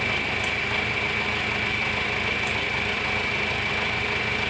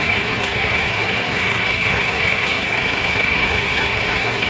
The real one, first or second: first